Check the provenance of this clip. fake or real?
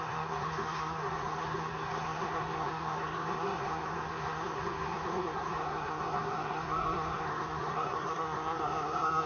fake